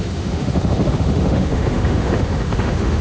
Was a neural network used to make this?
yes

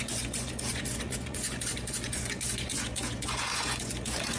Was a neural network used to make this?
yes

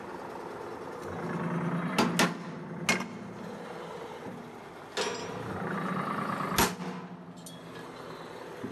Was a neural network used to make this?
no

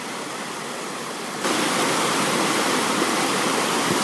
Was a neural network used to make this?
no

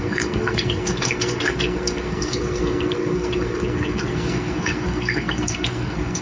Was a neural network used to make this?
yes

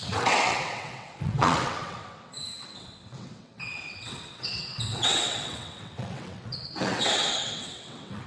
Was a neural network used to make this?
yes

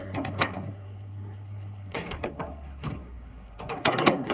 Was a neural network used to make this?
yes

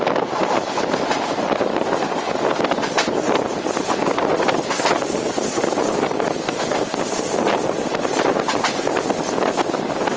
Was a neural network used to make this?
no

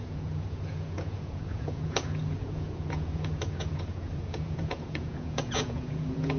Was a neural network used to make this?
yes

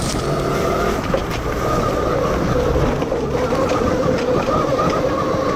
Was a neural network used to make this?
yes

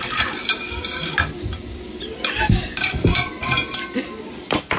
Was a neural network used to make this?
no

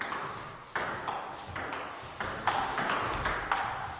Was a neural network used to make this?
no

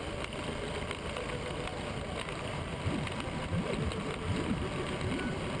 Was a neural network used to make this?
yes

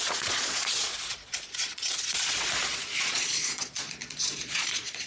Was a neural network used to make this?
yes